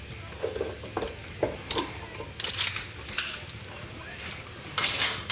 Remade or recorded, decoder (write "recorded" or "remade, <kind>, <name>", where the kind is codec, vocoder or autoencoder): recorded